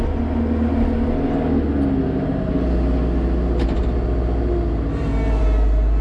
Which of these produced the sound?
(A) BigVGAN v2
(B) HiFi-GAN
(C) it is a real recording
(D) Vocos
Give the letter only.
C